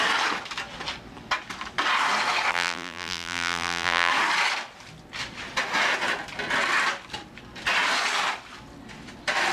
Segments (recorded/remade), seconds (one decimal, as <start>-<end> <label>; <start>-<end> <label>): 0.0-2.5 recorded; 2.5-4.1 remade; 4.1-9.5 recorded